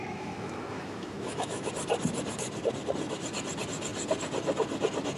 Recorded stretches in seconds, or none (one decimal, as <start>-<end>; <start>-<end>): 1.7-5.2